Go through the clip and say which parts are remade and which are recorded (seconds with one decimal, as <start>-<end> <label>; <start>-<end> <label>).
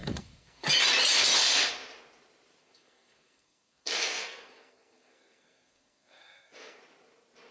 0.0-0.7 remade; 0.7-2.6 recorded; 2.6-6.8 remade; 6.8-7.5 recorded